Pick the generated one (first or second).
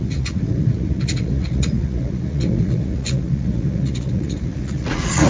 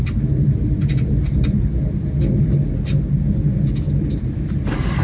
first